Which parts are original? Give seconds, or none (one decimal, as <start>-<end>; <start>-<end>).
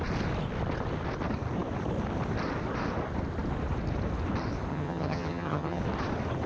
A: 0.0-4.7; 5.8-6.5